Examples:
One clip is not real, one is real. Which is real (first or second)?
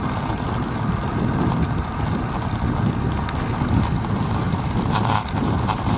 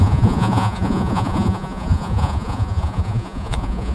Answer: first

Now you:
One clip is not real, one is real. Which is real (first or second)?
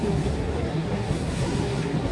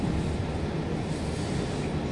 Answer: second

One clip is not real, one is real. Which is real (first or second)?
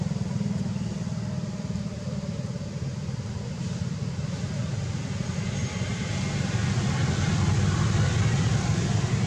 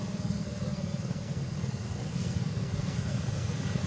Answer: first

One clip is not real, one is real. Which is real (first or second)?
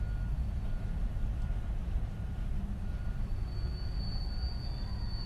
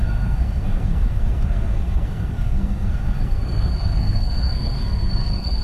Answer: first